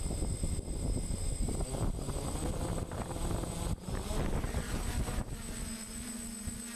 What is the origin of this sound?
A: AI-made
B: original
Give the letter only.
B